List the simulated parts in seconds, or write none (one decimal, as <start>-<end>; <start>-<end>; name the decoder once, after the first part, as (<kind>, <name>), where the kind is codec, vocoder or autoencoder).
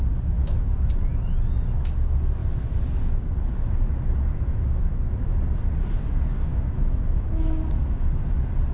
4.3-5.2 (autoencoder, DAC-VAE); 6.5-7.6